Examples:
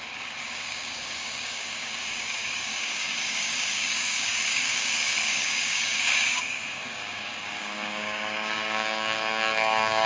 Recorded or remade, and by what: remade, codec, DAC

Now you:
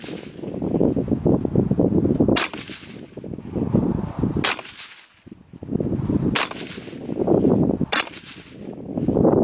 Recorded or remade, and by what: recorded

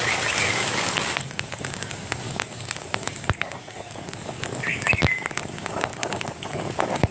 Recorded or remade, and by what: remade, codec, DAC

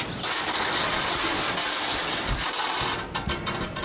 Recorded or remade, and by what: recorded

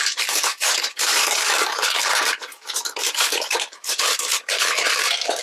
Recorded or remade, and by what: remade, codec, DAC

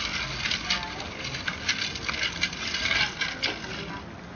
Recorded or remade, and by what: recorded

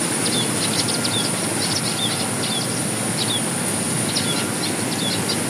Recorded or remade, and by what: recorded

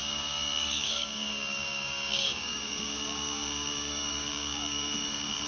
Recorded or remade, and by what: remade, codec, DAC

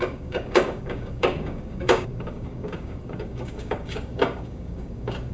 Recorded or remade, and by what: remade, codec, DAC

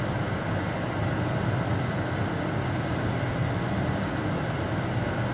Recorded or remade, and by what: recorded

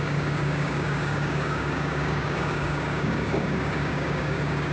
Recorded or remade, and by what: remade, codec, DAC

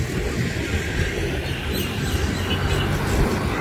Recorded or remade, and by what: recorded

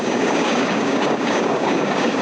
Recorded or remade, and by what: remade, codec, DAC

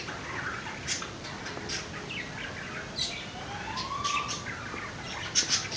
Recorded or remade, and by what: recorded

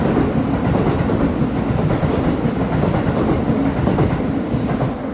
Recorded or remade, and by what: recorded